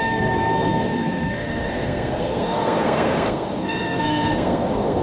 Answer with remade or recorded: remade